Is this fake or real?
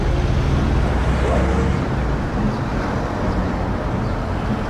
real